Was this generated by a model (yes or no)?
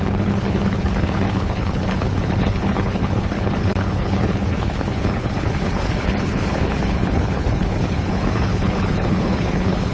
yes